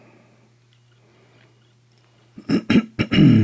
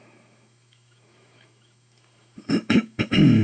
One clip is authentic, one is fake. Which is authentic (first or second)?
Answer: first